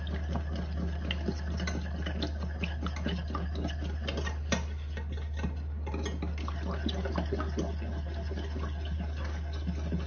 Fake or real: real